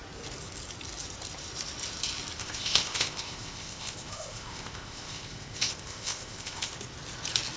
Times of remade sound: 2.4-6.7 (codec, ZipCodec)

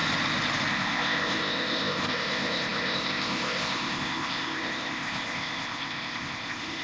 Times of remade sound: 0.7-6.8 (codec, ZipCodec)